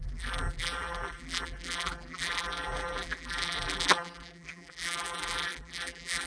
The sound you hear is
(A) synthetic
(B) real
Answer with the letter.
A